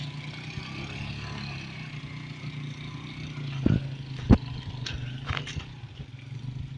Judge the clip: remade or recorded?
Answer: recorded